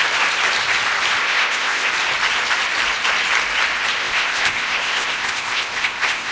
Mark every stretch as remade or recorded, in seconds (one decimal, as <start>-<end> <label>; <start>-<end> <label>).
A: 0.0-1.2 recorded; 1.2-1.9 remade; 1.9-4.0 recorded; 4.0-6.3 remade